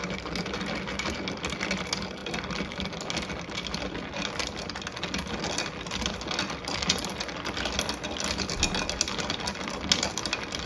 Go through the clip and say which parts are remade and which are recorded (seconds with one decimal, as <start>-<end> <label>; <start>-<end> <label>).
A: 0.0-2.2 recorded; 2.2-2.7 remade; 2.7-10.7 recorded